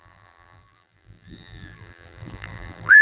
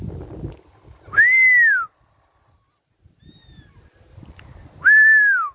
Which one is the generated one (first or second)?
first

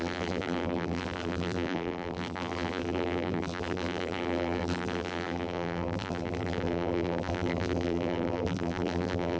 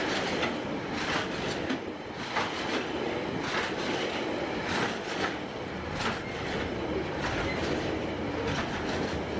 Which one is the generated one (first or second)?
first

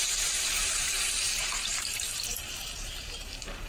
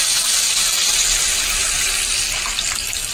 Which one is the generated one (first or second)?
first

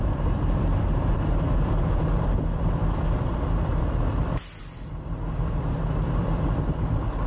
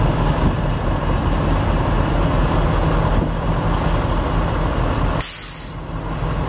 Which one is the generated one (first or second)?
first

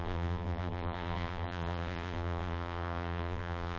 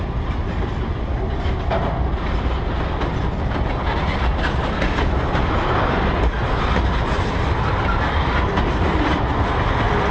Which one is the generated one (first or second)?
first